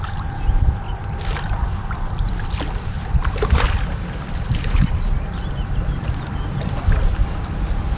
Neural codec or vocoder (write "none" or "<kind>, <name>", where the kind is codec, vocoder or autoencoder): none